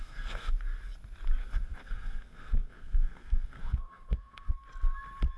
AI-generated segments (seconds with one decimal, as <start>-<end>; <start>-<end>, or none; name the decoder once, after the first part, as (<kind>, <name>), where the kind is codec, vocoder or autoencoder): 0.0-0.5 (codec, SNAC); 1.4-4.5